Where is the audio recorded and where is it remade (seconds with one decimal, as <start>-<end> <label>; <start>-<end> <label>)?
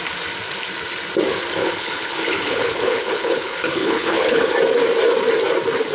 0.0-1.6 recorded; 1.6-4.4 remade; 4.4-5.9 recorded